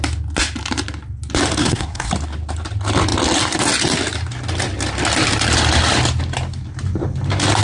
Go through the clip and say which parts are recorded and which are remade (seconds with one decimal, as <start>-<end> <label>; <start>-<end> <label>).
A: 0.0-1.6 recorded; 1.6-2.1 remade; 2.1-7.6 recorded